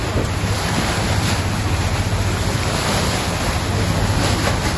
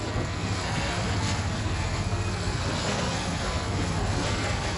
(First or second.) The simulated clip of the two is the second